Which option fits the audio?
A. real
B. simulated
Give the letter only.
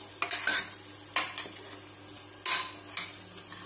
A